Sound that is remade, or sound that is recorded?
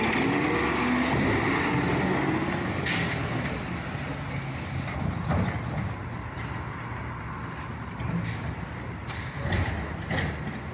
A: recorded